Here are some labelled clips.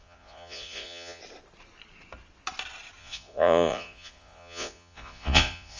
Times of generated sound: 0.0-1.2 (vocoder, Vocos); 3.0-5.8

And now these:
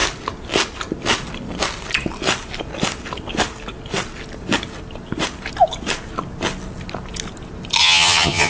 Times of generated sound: 7.8-8.5 (vocoder, HiFi-GAN)

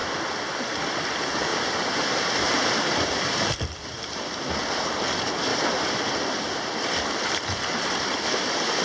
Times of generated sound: 1.5-4.5 (vocoder, BigVGAN v2); 5.5-7.0